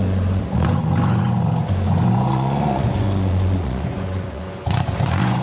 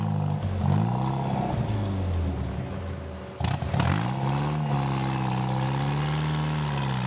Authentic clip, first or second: second